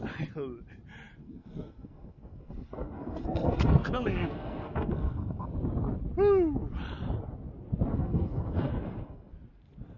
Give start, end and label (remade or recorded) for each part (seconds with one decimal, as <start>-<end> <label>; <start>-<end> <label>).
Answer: 0.0-1.2 recorded; 1.2-5.5 remade; 5.5-7.9 recorded; 7.9-9.3 remade; 9.3-10.0 recorded